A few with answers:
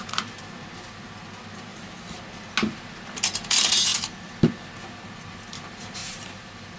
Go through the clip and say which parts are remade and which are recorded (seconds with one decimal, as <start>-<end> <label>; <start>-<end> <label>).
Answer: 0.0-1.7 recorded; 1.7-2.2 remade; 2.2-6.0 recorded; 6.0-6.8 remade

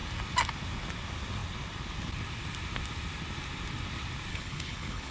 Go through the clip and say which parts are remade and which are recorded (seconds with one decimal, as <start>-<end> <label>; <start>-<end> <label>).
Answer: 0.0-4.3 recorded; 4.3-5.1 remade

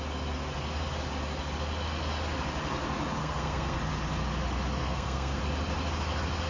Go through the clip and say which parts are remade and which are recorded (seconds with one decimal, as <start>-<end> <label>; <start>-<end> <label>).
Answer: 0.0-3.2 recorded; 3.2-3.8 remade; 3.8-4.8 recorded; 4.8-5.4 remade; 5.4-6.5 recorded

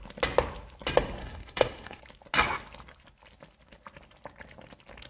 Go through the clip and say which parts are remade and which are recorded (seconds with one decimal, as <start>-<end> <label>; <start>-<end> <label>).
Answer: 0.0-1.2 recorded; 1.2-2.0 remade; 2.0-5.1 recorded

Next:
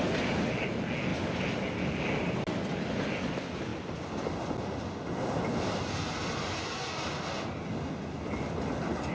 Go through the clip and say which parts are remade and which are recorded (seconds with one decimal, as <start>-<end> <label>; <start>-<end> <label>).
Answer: 0.0-9.1 recorded

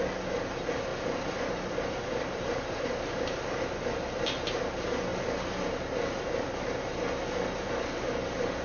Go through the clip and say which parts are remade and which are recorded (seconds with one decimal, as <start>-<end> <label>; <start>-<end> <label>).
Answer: 0.0-0.9 recorded; 0.9-3.7 remade; 3.7-8.6 recorded

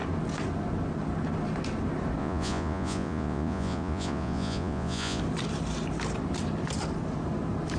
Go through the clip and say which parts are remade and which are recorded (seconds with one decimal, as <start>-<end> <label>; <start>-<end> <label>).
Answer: 0.0-2.2 recorded; 2.2-5.2 remade; 5.2-7.8 recorded